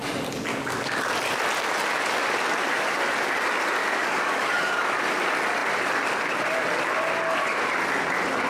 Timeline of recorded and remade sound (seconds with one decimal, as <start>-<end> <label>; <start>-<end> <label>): 0.0-0.5 recorded; 0.5-1.1 remade; 1.1-3.8 recorded; 3.8-5.0 remade; 5.0-8.5 recorded

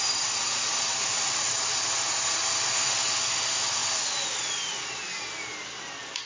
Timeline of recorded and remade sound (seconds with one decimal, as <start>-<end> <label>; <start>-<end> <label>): 0.0-6.3 recorded

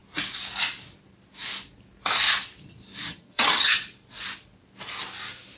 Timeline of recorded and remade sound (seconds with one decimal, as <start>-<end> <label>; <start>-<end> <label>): 0.0-3.1 recorded; 3.1-3.7 remade; 3.7-5.6 recorded

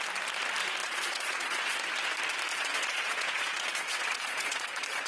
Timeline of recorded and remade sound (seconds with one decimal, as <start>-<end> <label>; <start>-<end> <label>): 0.0-0.8 recorded; 0.8-1.8 remade; 1.8-2.5 recorded; 2.5-5.1 remade

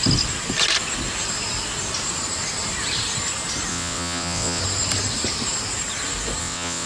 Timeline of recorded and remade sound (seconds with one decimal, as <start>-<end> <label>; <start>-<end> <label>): 0.0-3.7 recorded; 3.7-4.6 remade; 4.6-6.4 recorded; 6.4-6.9 remade

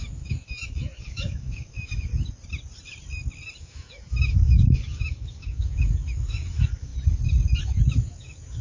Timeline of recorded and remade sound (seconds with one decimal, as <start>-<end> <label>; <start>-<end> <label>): 0.0-2.1 remade; 2.1-3.6 recorded; 3.6-6.9 remade; 6.9-7.6 recorded; 7.6-8.6 remade

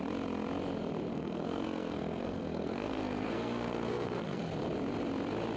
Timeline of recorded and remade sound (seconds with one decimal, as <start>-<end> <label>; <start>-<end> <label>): 0.0-1.1 recorded; 1.1-4.4 remade; 4.4-5.6 recorded